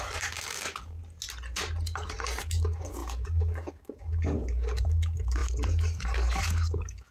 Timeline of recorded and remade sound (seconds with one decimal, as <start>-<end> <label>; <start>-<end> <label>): 0.0-1.0 remade; 1.0-2.4 recorded; 2.4-7.1 remade